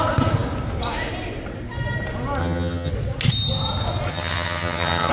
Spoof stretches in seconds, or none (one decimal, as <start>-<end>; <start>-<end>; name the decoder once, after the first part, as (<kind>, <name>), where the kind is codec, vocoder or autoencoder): 2.4-2.9 (vocoder, HiFi-GAN); 4.1-5.1